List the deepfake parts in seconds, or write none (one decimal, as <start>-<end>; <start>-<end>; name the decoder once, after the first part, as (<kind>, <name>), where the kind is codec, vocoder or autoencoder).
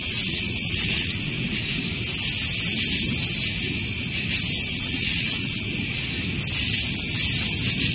0.0-1.8 (vocoder, Vocos); 4.7-6.0